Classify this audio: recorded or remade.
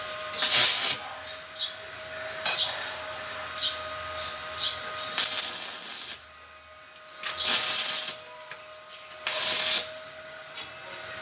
recorded